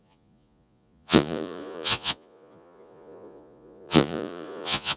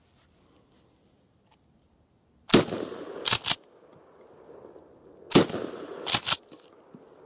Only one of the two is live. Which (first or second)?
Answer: second